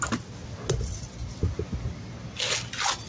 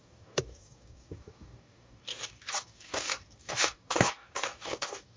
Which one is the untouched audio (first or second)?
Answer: first